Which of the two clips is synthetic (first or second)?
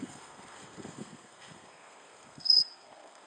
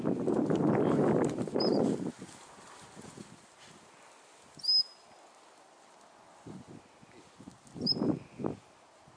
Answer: first